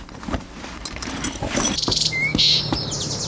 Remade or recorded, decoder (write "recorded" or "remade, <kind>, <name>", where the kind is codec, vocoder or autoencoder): recorded